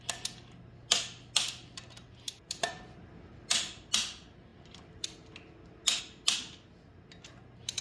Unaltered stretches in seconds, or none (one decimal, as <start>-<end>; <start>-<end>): 0.0-7.8